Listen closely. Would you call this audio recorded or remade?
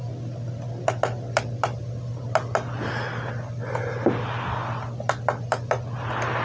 recorded